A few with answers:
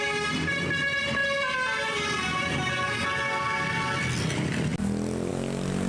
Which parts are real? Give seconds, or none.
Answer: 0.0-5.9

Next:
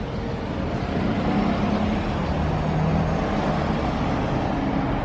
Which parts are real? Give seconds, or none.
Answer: 0.0-5.0

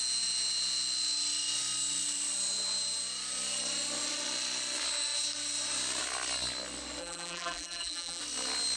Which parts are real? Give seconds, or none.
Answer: 0.0-7.0; 8.2-8.8

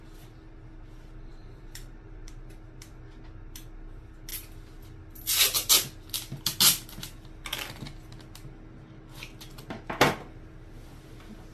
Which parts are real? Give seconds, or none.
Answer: 0.0-1.3; 2.3-11.5

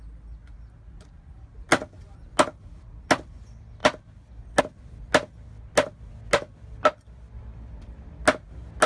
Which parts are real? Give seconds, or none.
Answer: 0.0-8.9

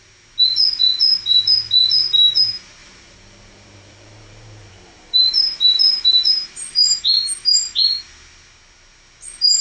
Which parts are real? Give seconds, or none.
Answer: 0.0-2.8; 7.0-9.6

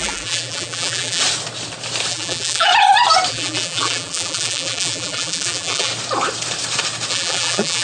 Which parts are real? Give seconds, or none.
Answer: 1.2-2.1; 2.7-3.3; 5.9-7.1

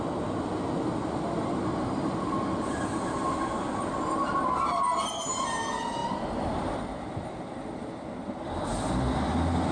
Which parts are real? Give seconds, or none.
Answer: 0.0-9.7